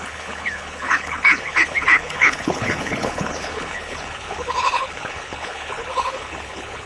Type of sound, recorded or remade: remade